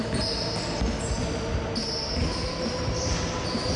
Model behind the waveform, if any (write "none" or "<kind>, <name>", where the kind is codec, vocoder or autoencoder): none